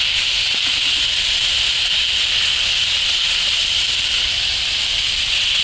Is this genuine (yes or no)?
yes